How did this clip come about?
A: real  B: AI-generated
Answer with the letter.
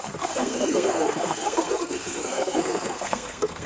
B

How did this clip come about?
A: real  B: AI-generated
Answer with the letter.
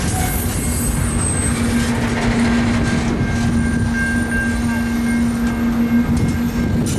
A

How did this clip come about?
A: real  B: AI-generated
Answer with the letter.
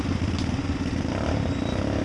A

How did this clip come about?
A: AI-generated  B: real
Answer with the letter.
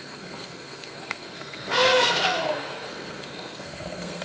A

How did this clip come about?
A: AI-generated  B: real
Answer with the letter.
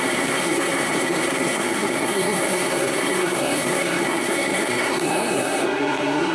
A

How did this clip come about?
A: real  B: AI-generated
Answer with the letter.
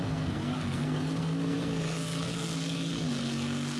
B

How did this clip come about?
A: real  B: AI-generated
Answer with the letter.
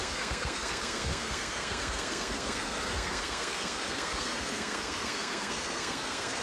B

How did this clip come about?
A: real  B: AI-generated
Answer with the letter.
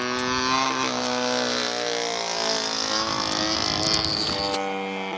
A